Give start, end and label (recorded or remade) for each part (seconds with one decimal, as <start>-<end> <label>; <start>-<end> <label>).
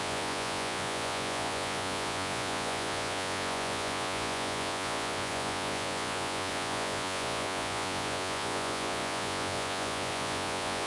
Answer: 0.0-10.9 remade